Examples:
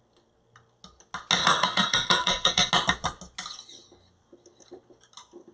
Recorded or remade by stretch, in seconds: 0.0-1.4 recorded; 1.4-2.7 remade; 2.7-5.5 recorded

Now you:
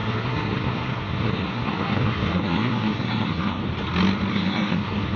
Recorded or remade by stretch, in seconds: 0.0-3.6 remade; 3.6-4.3 recorded; 4.3-5.2 remade

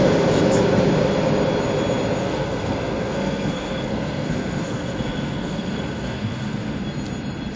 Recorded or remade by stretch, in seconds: 0.0-2.2 recorded; 2.2-6.8 remade; 6.8-7.6 recorded

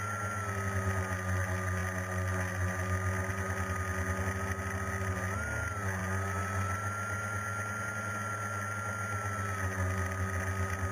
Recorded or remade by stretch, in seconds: 0.0-10.9 recorded

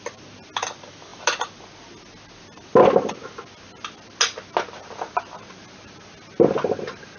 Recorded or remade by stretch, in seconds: 0.0-7.2 recorded

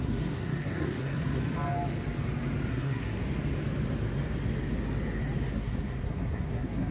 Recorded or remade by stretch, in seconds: 0.0-1.4 remade; 1.4-2.7 recorded; 2.7-3.2 remade; 3.2-5.5 recorded; 5.5-6.9 remade

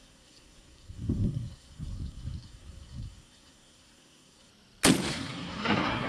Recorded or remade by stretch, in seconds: 0.0-4.5 remade; 4.5-5.1 recorded; 5.1-6.1 remade